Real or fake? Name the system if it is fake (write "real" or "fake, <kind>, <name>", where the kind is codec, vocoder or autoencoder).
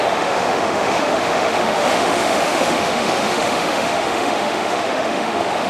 fake, autoencoder, DAC-VAE